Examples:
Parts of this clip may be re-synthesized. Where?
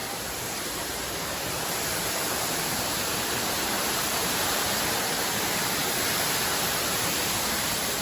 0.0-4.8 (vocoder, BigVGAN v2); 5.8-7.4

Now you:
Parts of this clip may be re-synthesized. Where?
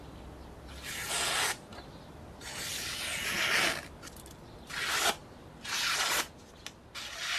5.2-6.0 (vocoder, BigVGAN v2)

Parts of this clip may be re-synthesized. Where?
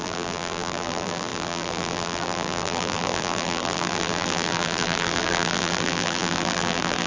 0.0-7.1 (vocoder, BigVGAN v2)